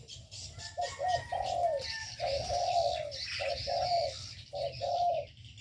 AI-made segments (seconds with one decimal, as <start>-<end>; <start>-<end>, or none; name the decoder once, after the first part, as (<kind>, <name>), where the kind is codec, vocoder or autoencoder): none